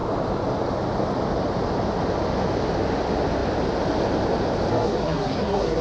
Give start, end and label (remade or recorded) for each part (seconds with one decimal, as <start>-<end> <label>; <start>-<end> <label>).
0.0-4.7 recorded; 4.7-5.8 remade